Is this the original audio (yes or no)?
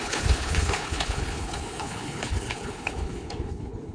no